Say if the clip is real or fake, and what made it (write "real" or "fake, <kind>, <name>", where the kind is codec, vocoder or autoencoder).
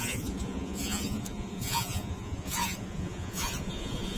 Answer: fake, vocoder, Vocos